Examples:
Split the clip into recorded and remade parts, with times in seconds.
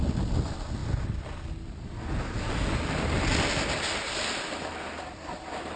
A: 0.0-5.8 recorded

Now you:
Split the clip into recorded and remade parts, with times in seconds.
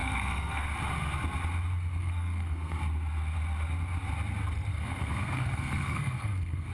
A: 0.0-0.7 remade; 0.7-2.0 recorded; 2.0-2.8 remade; 2.8-4.7 recorded; 4.7-6.7 remade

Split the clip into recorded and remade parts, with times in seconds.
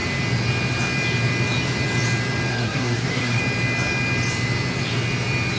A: 0.0-2.5 recorded; 2.5-3.4 remade; 3.4-5.6 recorded